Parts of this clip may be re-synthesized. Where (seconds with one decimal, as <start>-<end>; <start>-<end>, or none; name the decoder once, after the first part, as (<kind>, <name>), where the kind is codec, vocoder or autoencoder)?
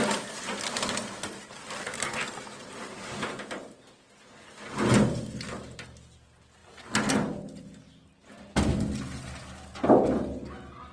none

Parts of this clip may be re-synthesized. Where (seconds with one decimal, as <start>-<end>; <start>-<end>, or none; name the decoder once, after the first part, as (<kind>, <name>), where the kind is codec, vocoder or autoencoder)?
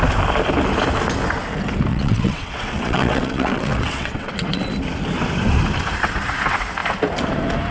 1.9-4.7 (vocoder, WaveNeXt)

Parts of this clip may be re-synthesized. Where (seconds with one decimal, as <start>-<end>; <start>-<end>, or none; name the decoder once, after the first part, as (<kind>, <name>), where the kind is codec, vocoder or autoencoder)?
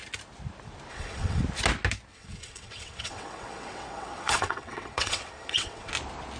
0.9-1.4 (vocoder, WaveNeXt); 2.1-5.9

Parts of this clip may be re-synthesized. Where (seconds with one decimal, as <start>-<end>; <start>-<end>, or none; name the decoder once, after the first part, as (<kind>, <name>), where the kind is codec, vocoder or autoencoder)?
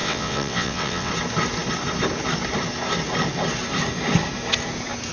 0.0-1.1 (vocoder, WaveNeXt)